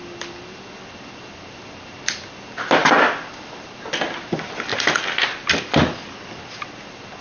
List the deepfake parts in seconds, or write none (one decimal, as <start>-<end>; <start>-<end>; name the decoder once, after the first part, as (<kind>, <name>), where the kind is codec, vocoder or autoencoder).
none